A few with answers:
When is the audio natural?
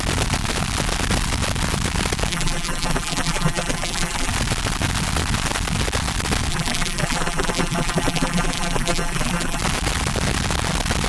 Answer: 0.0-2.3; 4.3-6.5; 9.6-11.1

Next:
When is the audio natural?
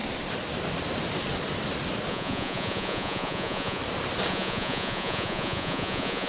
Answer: 0.0-2.1; 3.8-4.3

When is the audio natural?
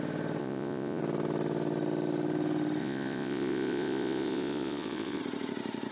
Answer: 0.0-0.4; 1.0-2.8; 5.2-5.9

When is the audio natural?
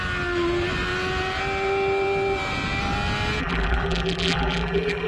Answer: 0.0-3.4